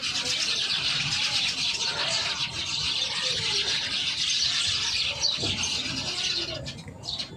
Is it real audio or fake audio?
real